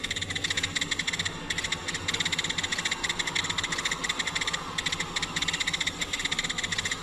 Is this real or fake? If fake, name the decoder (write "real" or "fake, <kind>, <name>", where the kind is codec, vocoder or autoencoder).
real